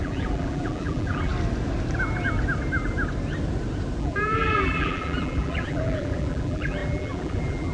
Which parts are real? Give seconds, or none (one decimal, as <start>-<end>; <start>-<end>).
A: 1.3-4.0